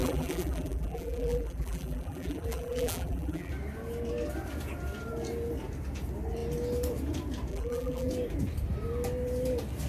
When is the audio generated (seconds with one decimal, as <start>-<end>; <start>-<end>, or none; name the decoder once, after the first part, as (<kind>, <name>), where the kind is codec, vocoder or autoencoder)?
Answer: 0.0-3.5 (vocoder, BigVGAN v2); 7.5-8.1

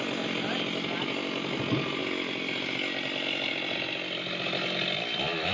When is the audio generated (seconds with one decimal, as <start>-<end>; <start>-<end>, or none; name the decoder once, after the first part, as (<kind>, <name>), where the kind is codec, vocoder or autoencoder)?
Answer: none

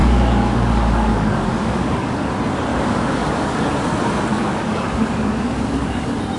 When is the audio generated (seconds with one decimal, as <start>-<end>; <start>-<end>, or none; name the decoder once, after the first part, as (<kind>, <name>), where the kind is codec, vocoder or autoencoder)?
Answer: 0.0-2.3 (codec, DAC); 2.7-3.6; 4.3-6.0

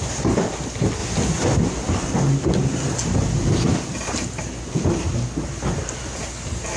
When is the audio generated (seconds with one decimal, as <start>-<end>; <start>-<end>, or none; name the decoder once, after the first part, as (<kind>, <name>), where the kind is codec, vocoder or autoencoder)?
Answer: none

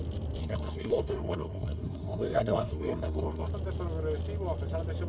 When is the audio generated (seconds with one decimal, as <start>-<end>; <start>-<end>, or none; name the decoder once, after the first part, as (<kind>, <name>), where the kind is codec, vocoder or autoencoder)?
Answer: 0.4-3.5 (codec, SNAC)

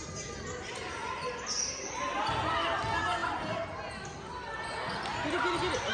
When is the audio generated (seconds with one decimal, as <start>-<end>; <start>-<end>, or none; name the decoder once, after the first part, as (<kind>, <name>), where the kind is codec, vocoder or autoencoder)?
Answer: none

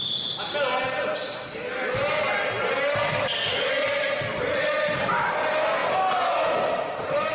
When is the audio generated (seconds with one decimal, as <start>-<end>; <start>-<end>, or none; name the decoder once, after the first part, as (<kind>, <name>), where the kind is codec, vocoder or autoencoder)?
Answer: none